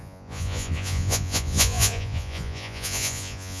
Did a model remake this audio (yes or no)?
yes